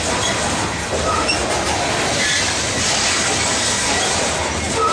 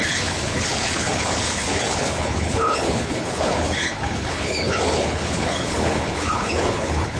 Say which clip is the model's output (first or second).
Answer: second